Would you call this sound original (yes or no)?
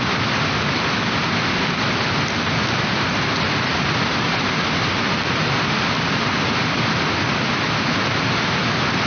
yes